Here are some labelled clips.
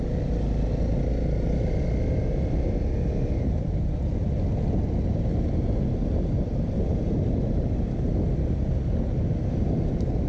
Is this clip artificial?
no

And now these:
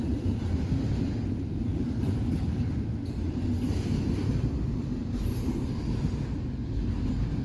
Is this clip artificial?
no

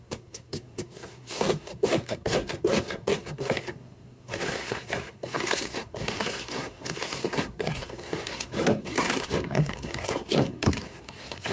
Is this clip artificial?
yes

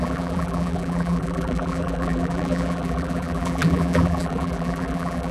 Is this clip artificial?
yes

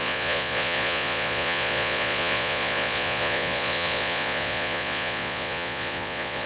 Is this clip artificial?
yes